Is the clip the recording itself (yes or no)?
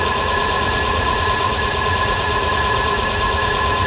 no